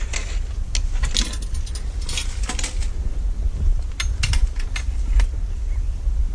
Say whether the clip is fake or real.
real